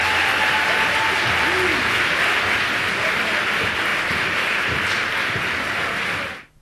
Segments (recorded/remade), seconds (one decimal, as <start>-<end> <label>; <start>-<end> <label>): 0.0-3.9 recorded; 3.9-5.4 remade; 5.4-6.6 recorded